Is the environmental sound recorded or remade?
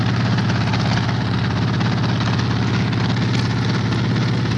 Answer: recorded